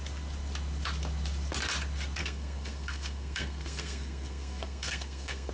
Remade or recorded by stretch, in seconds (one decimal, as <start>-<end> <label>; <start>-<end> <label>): 0.0-2.2 recorded; 2.2-5.5 remade